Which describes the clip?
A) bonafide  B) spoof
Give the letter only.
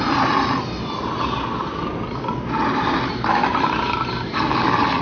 A